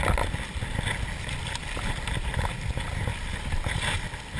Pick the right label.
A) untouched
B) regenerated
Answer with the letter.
A